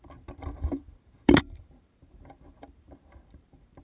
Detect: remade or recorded remade